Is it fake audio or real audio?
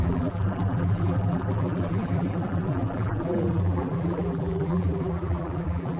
fake